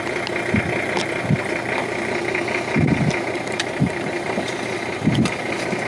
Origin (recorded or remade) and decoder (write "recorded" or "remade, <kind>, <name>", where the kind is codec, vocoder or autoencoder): recorded